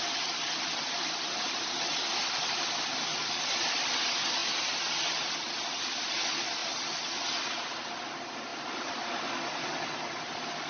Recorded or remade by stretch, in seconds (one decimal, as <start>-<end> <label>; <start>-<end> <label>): 0.0-8.5 recorded; 8.5-9.0 remade; 9.0-10.7 recorded

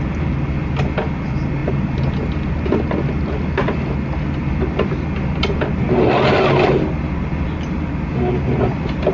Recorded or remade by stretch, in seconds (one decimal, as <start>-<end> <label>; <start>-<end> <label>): 0.0-9.1 recorded

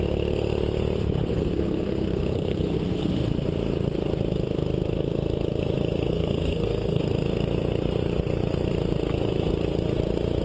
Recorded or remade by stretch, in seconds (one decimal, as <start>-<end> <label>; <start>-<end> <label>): 0.0-1.3 recorded; 1.3-3.1 remade; 3.1-6.1 recorded; 6.1-7.0 remade; 7.0-10.4 recorded

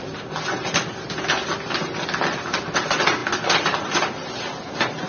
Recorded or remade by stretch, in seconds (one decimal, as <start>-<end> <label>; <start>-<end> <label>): 0.0-5.1 recorded

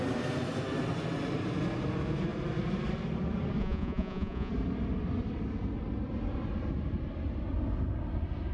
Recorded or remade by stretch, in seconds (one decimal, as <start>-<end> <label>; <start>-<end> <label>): 0.0-3.6 recorded; 3.6-4.5 remade; 4.5-8.5 recorded

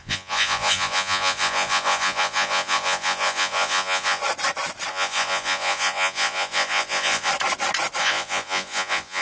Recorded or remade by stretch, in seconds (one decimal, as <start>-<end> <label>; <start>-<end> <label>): 0.0-4.2 remade; 4.2-4.9 recorded; 4.9-7.3 remade; 7.3-8.0 recorded; 8.0-9.2 remade

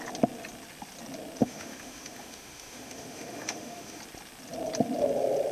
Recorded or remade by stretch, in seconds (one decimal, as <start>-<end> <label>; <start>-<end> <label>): 0.0-1.4 recorded; 1.4-4.0 remade; 4.0-5.5 recorded

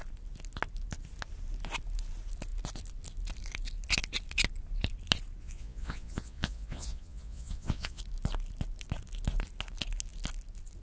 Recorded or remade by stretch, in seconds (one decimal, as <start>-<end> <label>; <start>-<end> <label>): 0.0-5.4 recorded; 5.4-8.0 remade; 8.0-10.8 recorded